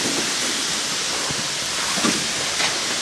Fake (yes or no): no